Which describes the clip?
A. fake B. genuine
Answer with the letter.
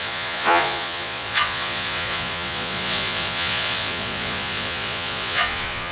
A